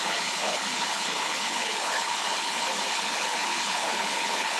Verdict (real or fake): fake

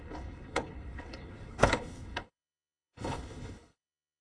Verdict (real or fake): fake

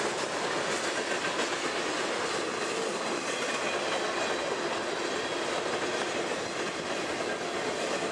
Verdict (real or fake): real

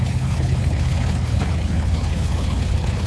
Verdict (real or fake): fake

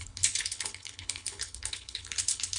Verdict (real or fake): fake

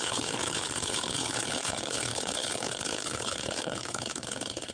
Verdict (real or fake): fake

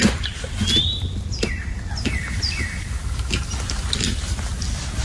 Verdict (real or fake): real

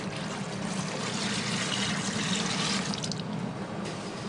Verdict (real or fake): real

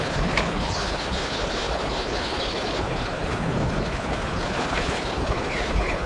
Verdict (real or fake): fake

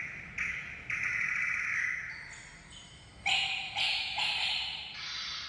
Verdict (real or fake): real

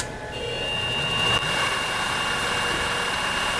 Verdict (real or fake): real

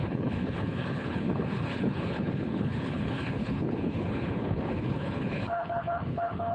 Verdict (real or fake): fake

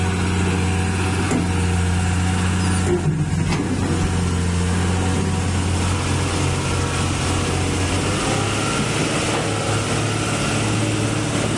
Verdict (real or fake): real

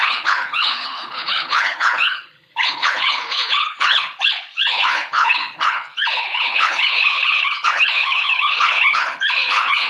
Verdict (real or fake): fake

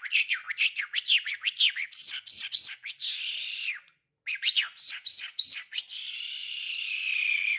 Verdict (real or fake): real